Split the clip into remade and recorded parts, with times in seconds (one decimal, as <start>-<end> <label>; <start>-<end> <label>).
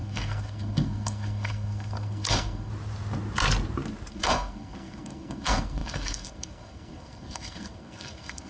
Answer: 0.0-2.7 remade; 2.7-4.1 recorded; 4.1-8.5 remade